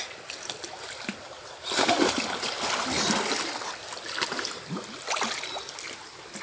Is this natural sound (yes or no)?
yes